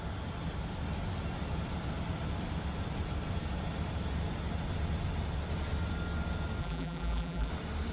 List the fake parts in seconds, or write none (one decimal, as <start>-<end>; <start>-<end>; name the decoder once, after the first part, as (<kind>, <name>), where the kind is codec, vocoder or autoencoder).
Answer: 6.6-7.5 (vocoder, BigVGAN v2)